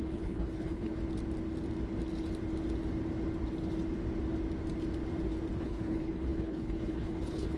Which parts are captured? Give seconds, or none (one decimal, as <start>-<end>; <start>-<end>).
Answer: 1.0-5.6